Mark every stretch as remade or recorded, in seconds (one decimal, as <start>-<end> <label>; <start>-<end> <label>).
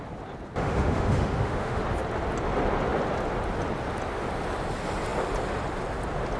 0.0-0.6 recorded; 0.6-1.8 remade; 1.8-6.4 recorded